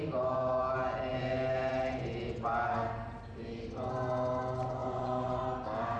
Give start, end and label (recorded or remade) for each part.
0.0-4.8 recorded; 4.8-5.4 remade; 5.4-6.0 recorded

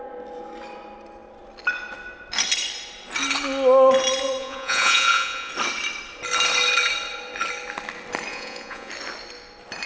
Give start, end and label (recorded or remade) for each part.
0.0-4.4 recorded; 4.4-5.5 remade; 5.5-8.3 recorded; 8.3-8.9 remade; 8.9-9.9 recorded

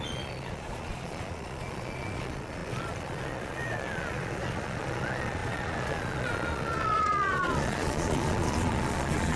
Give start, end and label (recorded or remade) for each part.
0.0-9.4 remade

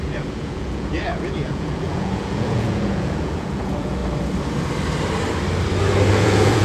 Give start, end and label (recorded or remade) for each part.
0.0-4.0 remade; 4.0-6.1 recorded; 6.1-6.6 remade

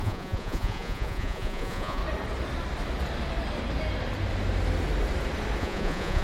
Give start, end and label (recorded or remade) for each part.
0.0-2.0 remade; 2.0-5.6 recorded; 5.6-6.2 remade

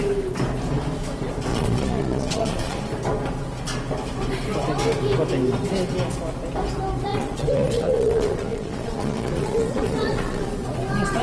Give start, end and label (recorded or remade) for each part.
0.0-1.5 recorded; 1.5-2.8 remade; 2.8-7.1 recorded; 7.1-10.5 remade; 10.5-11.2 recorded

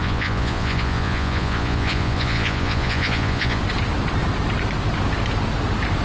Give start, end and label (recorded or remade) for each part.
0.0-3.6 remade; 3.6-6.0 recorded

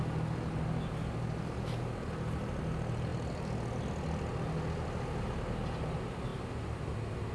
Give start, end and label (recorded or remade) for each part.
0.0-7.3 recorded